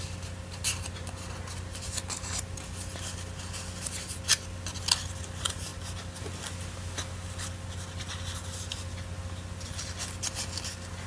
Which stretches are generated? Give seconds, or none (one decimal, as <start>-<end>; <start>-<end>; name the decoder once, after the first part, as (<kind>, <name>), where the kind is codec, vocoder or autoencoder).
none